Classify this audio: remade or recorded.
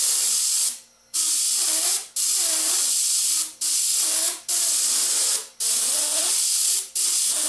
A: recorded